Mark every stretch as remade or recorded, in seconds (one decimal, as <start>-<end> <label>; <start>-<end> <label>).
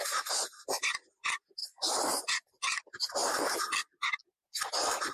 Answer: 0.0-5.1 recorded